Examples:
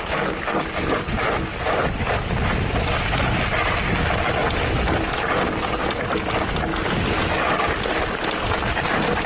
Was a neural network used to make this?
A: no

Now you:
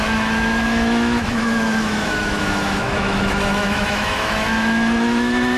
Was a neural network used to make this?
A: yes